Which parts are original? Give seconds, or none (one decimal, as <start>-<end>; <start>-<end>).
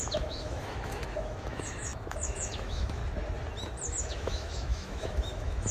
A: 3.0-3.9